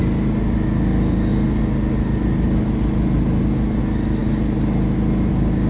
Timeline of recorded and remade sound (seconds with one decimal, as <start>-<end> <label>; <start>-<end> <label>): 0.0-5.7 recorded